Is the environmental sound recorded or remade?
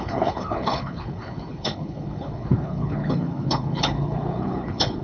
remade